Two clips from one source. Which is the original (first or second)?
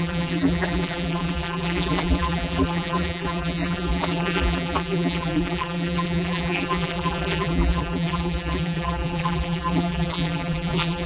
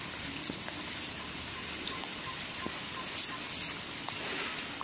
second